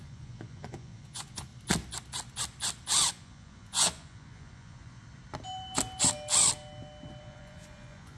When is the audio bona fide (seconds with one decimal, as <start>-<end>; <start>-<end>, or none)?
1.5-3.1; 5.0-7.2